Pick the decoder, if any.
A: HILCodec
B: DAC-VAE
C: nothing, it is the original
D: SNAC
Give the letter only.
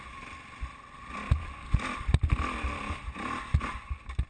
C